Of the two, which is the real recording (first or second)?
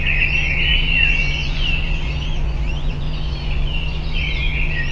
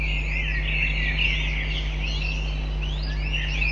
second